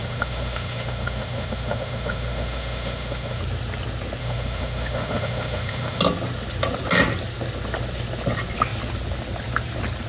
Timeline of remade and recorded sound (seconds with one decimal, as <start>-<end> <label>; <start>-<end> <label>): 0.0-3.4 remade; 3.4-4.2 recorded; 4.2-6.0 remade; 6.0-10.1 recorded